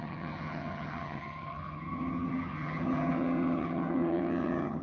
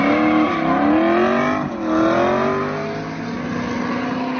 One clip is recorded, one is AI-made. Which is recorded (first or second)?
second